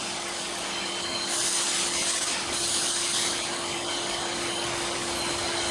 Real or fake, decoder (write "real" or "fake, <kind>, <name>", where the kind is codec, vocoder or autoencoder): fake, codec, DAC